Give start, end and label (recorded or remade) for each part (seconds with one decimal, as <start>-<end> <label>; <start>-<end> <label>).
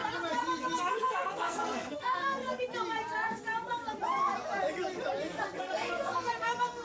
0.0-0.9 recorded; 0.9-2.4 remade; 2.4-5.6 recorded; 5.6-6.8 remade